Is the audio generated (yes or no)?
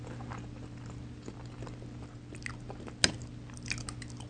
no